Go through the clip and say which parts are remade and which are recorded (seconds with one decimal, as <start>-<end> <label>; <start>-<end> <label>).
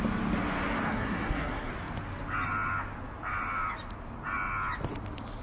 0.0-0.9 recorded; 0.9-1.7 remade; 1.7-5.4 recorded